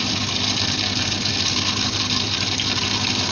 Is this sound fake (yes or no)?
no